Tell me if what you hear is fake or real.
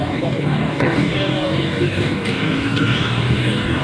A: fake